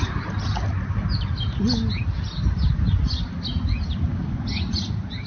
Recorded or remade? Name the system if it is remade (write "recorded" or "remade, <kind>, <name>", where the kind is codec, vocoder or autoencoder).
recorded